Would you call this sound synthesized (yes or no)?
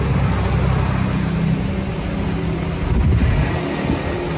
no